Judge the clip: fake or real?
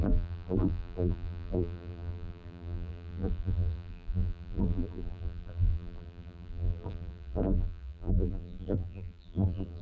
fake